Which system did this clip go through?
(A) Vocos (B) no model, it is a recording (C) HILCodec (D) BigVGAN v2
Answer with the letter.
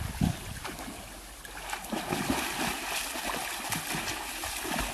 B